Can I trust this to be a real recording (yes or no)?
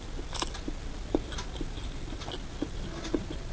yes